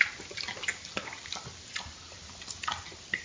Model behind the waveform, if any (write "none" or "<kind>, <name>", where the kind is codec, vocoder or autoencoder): none